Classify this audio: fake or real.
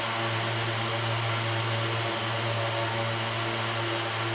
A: real